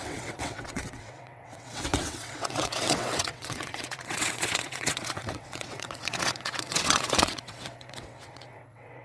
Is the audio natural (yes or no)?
no